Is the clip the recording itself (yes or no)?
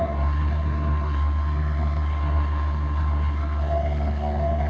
no